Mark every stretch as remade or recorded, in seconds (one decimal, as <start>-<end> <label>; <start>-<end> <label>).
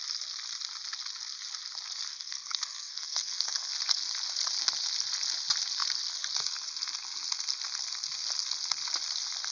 0.0-2.1 recorded; 2.1-3.7 remade; 3.7-9.5 recorded